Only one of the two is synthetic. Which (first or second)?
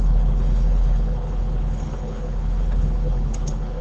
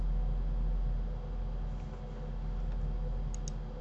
first